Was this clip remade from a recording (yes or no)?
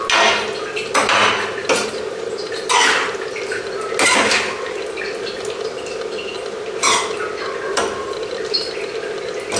no